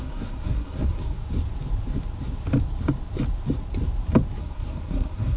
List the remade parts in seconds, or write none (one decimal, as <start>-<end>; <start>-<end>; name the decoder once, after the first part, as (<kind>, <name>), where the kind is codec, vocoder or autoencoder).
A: 0.0-1.2 (codec, SNAC); 4.4-5.4